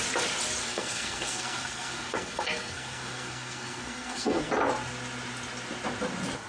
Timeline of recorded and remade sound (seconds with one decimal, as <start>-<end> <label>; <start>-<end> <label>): 0.0-0.6 recorded; 0.6-4.5 remade; 4.5-6.5 recorded

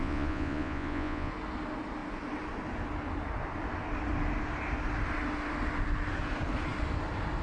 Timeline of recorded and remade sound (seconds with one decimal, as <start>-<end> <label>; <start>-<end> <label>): 0.0-1.3 remade; 1.3-7.4 recorded

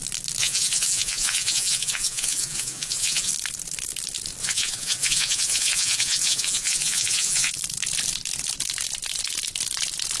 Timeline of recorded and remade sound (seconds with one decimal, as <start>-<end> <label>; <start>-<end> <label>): 0.0-0.4 recorded; 0.4-3.3 remade; 3.3-4.4 recorded; 4.4-7.5 remade; 7.5-10.2 recorded

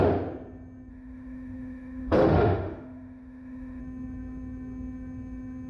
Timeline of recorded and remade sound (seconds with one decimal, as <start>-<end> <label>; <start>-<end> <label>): 0.0-0.9 recorded; 0.9-3.8 remade; 3.8-5.7 recorded

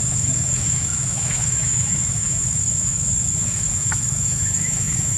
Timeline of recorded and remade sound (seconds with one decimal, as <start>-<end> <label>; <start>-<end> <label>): 0.0-5.2 remade

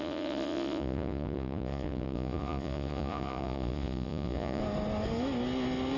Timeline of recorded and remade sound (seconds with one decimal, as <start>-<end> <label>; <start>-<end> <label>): 0.0-4.6 remade; 4.6-6.0 recorded

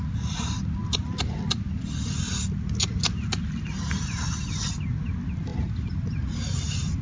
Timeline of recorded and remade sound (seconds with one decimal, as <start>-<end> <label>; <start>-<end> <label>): 0.0-0.8 recorded; 0.8-2.2 remade; 2.2-5.5 recorded; 5.5-7.0 remade